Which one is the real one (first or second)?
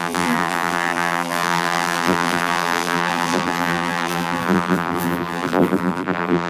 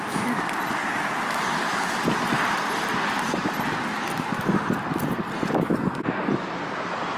second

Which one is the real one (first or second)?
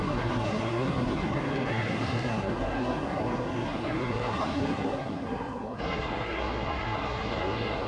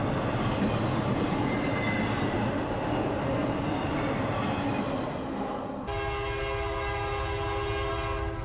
second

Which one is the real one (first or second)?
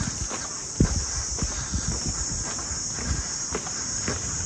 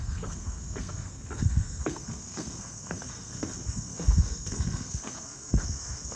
first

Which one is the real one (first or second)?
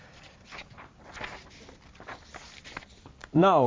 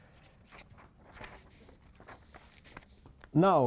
second